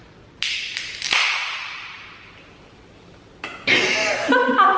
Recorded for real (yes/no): yes